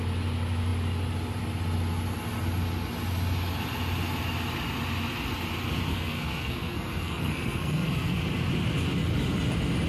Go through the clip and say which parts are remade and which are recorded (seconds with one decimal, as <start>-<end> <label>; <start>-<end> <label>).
0.0-5.9 recorded; 5.9-8.2 remade; 8.2-9.9 recorded